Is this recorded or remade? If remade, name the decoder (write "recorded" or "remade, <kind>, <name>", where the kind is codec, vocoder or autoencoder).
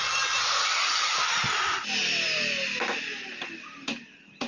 recorded